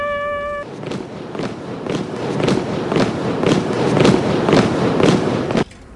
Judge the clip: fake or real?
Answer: real